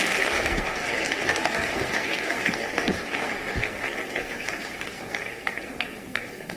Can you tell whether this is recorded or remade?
remade